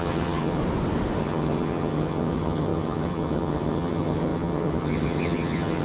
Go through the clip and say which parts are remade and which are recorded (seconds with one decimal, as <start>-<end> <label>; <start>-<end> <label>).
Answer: 0.0-0.6 remade; 0.6-1.2 recorded; 1.2-5.8 remade